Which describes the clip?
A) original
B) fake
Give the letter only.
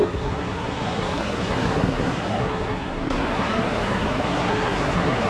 B